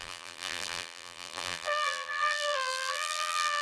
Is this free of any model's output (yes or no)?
no